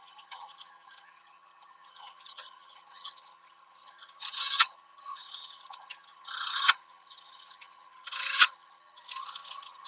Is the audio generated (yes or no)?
yes